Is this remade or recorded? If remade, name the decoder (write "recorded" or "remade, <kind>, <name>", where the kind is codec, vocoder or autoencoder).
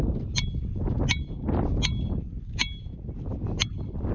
recorded